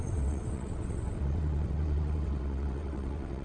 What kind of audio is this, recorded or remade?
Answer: remade